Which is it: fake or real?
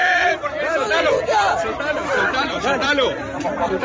fake